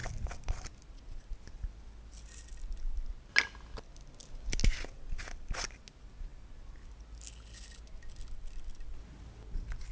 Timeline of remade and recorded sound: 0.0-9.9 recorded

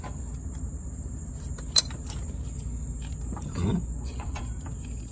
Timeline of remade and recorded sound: 0.0-3.7 recorded; 3.7-4.4 remade; 4.4-5.1 recorded

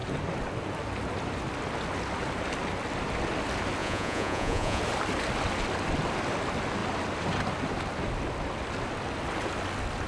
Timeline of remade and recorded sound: 0.0-3.8 recorded; 3.8-4.8 remade; 4.8-10.1 recorded